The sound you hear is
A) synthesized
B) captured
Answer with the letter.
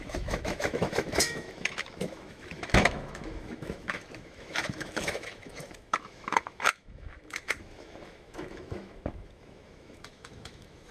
A